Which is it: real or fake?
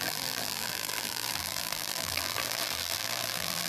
fake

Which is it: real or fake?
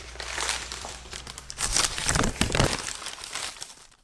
fake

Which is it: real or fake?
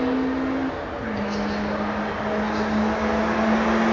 real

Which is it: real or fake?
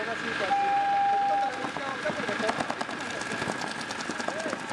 real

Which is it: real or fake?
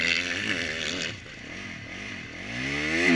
real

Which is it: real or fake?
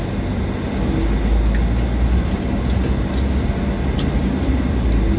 real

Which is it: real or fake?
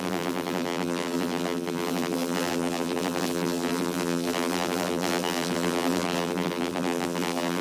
fake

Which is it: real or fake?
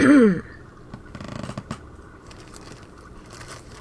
fake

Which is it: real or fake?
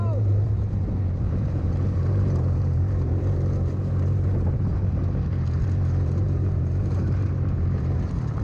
fake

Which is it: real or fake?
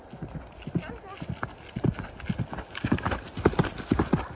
real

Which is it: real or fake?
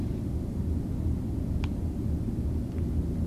real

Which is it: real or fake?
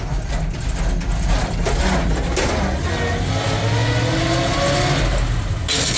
real